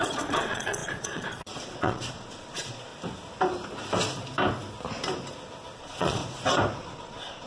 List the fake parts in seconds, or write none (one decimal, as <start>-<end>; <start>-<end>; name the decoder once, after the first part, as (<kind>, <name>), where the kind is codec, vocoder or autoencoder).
0.0-2.9 (vocoder, Vocos); 5.8-6.2; 6.8-7.5